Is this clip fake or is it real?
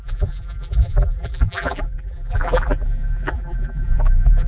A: fake